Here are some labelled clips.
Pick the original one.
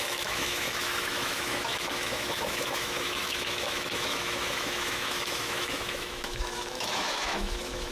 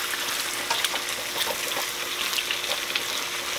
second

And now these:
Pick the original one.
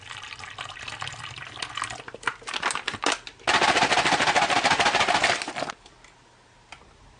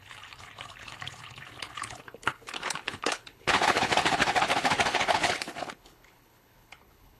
first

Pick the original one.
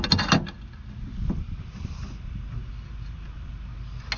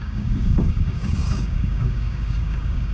first